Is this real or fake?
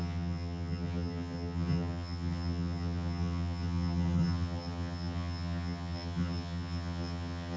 fake